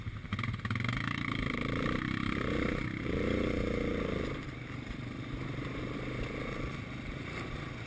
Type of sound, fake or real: fake